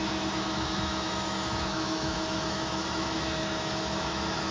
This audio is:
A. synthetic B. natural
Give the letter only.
A